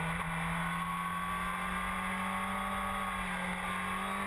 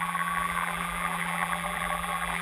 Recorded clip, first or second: first